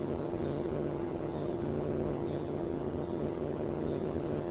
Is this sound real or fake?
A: fake